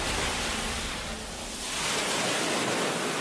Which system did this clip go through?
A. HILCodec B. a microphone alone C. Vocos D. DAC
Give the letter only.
B